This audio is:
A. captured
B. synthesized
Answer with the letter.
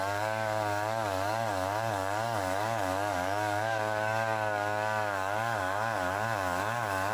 B